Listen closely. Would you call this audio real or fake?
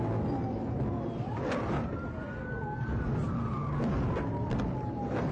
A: real